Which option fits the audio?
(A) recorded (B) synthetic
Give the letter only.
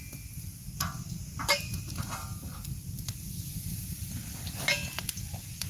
A